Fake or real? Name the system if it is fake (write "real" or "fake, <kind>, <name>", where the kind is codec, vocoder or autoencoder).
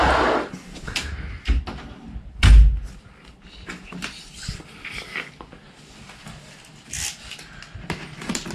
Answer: real